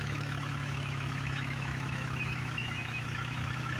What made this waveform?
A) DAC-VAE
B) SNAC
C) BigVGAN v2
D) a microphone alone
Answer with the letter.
A